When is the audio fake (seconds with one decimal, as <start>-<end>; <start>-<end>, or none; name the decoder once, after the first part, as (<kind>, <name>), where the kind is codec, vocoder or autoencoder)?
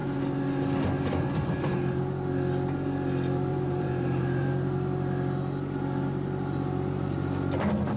3.5-4.4 (vocoder, BigVGAN v2)